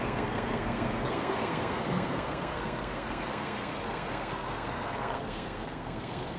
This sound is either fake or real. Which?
fake